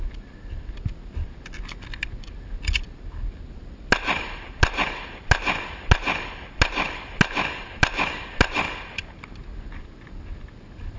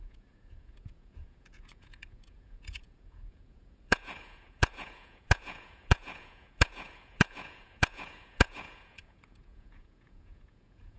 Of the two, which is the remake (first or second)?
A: second